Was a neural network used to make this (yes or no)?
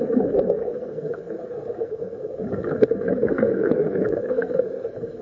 yes